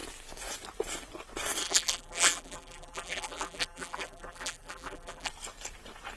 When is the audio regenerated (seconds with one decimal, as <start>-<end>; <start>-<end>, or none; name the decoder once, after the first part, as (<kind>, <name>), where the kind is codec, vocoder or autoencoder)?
1.6-5.3 (vocoder, BigVGAN v2)